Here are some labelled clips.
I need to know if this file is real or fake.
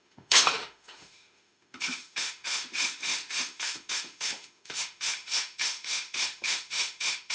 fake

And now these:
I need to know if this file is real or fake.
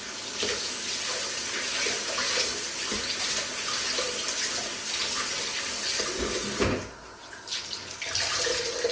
real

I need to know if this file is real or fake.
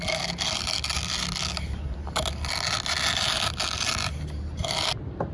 real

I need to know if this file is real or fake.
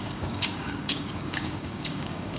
fake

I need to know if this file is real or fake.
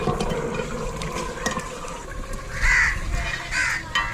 real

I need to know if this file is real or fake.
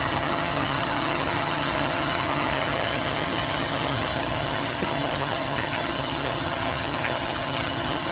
fake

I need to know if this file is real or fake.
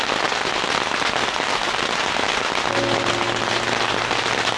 real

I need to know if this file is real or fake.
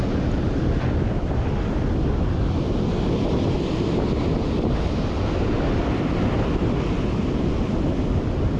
real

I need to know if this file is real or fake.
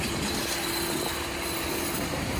fake